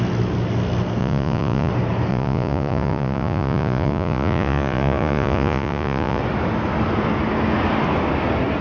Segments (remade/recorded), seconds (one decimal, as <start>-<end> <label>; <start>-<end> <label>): 0.0-1.0 recorded; 1.0-1.7 remade; 1.7-2.1 recorded; 2.1-6.2 remade; 6.2-8.6 recorded